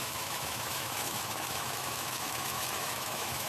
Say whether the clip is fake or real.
fake